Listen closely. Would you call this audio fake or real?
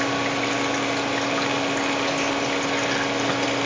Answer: real